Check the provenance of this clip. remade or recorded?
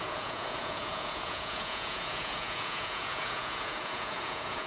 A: remade